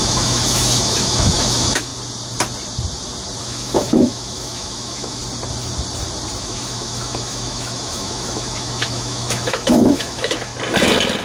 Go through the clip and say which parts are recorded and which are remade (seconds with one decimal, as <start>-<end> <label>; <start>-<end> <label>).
0.0-1.9 remade; 1.9-3.4 recorded; 3.4-5.2 remade; 5.2-6.4 recorded; 6.4-10.5 remade; 10.5-11.2 recorded